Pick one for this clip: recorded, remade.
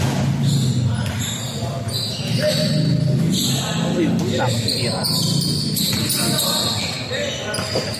recorded